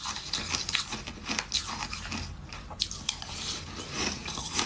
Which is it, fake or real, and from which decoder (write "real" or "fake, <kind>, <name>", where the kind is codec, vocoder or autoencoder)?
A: real